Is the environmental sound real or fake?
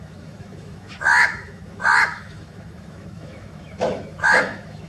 fake